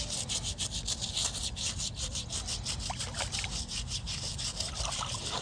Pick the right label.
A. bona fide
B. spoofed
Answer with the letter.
A